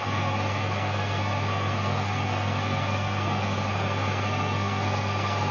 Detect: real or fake fake